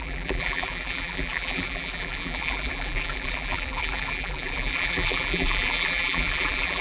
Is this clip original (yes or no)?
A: no